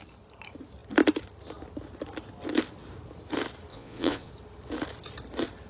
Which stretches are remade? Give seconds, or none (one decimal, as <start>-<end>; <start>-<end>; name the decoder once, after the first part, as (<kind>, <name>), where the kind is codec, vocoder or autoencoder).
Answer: 3.7-4.3 (vocoder, Vocos)